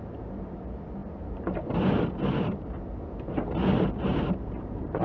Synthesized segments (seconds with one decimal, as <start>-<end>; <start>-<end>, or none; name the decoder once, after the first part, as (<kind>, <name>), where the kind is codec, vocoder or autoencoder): 4.1-5.0 (vocoder, BigVGAN v2)